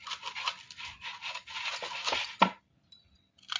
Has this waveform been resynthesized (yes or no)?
no